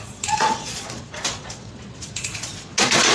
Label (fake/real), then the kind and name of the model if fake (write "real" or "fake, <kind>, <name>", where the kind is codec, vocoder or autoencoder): fake, vocoder, Vocos